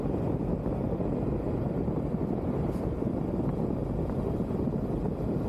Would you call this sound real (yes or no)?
yes